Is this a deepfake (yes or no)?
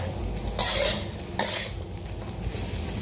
no